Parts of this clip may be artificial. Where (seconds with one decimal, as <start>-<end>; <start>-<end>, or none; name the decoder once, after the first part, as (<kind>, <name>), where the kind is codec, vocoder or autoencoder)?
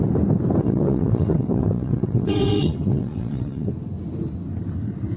0.6-3.7 (vocoder, WaveNeXt)